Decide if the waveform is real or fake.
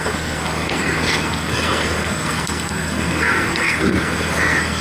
fake